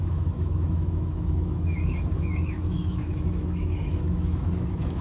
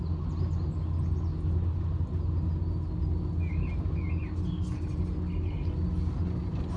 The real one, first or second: second